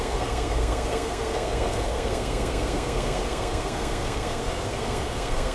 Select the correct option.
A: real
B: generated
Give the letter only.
B